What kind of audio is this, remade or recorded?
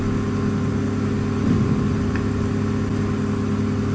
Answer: recorded